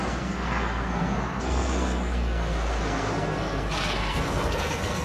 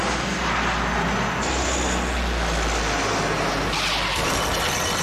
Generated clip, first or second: first